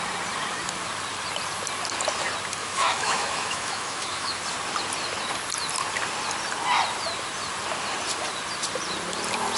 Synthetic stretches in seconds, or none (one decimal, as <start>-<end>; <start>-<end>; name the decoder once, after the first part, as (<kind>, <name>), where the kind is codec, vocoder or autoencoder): 2.6-4.4 (autoencoder, DAC-VAE)